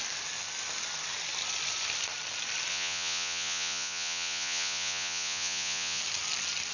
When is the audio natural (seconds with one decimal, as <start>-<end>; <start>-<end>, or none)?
0.0-2.7; 6.0-6.7